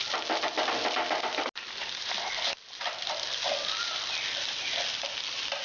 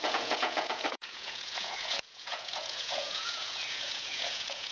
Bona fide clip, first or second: first